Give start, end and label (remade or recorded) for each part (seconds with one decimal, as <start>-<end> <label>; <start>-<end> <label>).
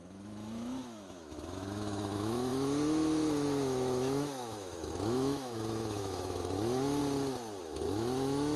0.0-7.0 remade; 7.0-7.6 recorded; 7.6-8.6 remade